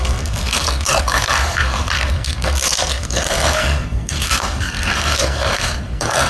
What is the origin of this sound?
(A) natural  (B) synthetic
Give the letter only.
B